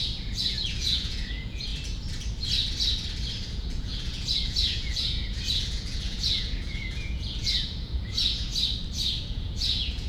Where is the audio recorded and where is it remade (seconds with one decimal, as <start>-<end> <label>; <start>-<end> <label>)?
0.0-1.7 remade; 1.7-3.5 recorded; 3.5-8.5 remade; 8.5-9.2 recorded; 9.2-10.1 remade